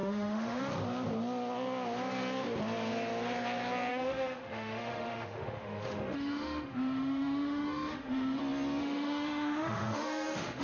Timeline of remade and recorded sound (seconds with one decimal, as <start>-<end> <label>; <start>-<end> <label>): 0.0-0.6 remade; 0.6-3.9 recorded; 3.9-8.4 remade; 8.4-8.8 recorded; 8.8-10.6 remade